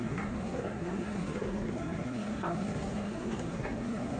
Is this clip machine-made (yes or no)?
yes